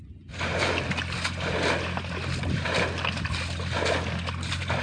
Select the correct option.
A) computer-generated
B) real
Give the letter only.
B